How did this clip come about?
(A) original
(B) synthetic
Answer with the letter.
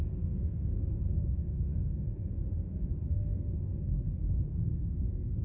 B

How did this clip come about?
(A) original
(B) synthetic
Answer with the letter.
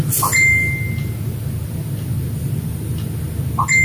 A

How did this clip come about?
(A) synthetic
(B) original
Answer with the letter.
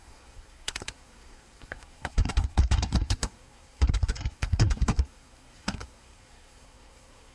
A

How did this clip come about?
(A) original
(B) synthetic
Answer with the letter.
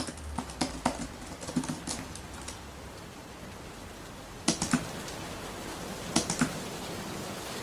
A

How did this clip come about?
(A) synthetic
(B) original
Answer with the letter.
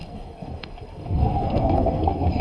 A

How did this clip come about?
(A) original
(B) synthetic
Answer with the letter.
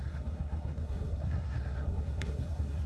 B